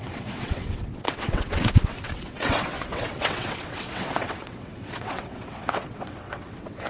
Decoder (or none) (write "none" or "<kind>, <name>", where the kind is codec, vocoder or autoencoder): vocoder, WaveNeXt